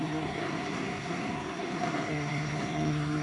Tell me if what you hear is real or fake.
fake